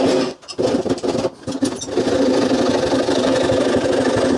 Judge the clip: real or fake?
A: real